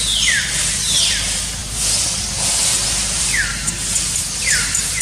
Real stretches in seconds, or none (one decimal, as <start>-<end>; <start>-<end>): 0.0-5.0